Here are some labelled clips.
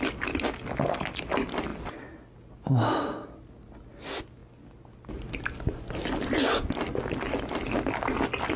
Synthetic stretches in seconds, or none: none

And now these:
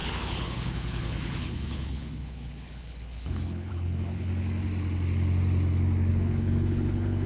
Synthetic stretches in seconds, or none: 0.0-4.3 (codec, HILCodec); 6.1-7.3

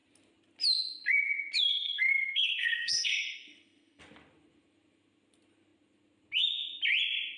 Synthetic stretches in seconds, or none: 1.7-4.0 (codec, SNAC)

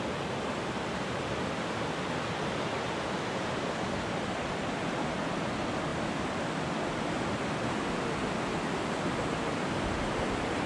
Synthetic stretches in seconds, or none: none

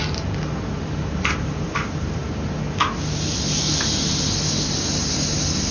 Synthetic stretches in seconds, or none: 0.8-2.2 (vocoder, BigVGAN v2)

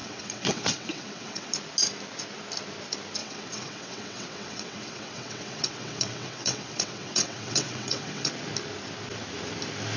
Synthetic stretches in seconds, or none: 0.0-1.5 (vocoder, WaveNeXt); 3.2-8.3